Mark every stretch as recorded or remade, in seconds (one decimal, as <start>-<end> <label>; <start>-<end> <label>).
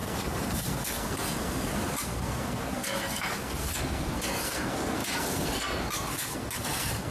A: 0.0-7.1 remade